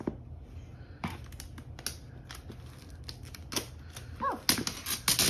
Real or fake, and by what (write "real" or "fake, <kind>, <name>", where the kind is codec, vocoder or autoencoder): real